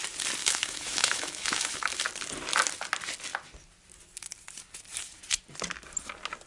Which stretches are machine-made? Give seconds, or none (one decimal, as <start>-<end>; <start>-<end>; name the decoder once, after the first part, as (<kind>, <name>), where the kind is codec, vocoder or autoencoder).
0.4-2.0 (autoencoder, DAC-VAE)

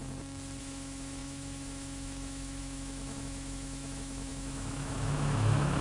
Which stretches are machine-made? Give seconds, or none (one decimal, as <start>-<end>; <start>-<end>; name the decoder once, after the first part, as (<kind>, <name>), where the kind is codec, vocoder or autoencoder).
0.6-5.8 (autoencoder, DAC-VAE)

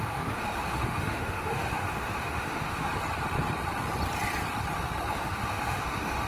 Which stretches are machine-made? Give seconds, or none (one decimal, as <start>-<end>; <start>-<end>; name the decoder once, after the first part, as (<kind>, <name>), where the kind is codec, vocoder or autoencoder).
0.0-2.9 (autoencoder, DAC-VAE); 5.1-6.3

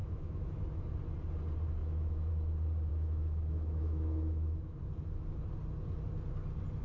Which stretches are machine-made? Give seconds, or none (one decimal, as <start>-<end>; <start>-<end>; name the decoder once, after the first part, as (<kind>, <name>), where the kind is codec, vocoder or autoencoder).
0.0-0.6 (autoencoder, DAC-VAE); 1.8-2.3; 2.9-4.8

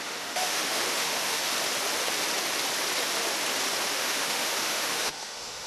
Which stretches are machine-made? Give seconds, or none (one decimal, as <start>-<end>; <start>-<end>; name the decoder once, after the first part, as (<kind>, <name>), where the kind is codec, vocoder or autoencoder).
0.0-1.5 (autoencoder, DAC-VAE); 3.9-5.7

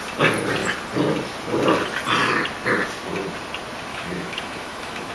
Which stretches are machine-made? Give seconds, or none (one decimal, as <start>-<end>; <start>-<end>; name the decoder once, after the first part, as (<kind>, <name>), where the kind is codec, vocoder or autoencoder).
3.9-5.1 (autoencoder, DAC-VAE)